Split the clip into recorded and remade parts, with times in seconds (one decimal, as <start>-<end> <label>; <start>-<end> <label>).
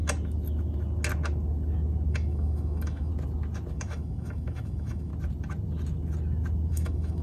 0.0-2.1 recorded; 2.1-3.1 remade; 3.1-3.7 recorded; 3.7-5.1 remade; 5.1-6.7 recorded; 6.7-7.2 remade